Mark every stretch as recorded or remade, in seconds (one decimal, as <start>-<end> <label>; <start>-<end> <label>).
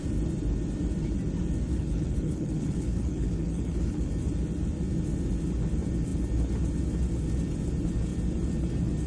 0.0-1.7 recorded; 1.7-4.1 remade; 4.1-9.1 recorded